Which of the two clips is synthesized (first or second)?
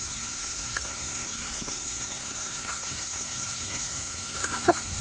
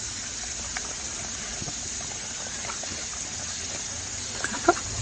first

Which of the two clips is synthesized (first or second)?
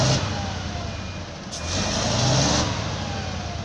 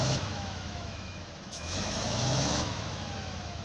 second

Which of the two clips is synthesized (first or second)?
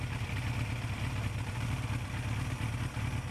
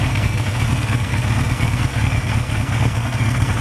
second